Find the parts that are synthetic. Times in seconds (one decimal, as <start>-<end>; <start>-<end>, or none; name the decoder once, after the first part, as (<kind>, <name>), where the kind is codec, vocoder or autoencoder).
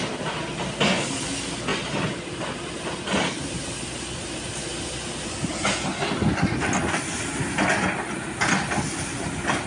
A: none